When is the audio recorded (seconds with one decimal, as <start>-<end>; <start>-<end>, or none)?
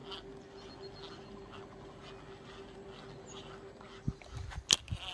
0.0-5.1